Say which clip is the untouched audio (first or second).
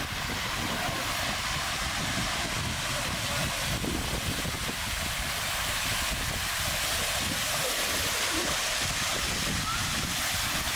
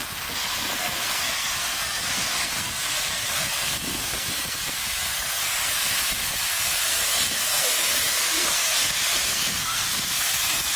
first